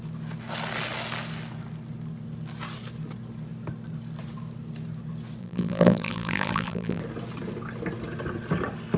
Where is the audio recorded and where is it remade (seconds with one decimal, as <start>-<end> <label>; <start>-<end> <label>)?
0.0-5.4 recorded; 5.4-7.0 remade; 7.0-9.0 recorded